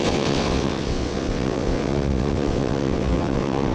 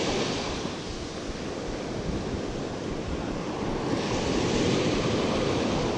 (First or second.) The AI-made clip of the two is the first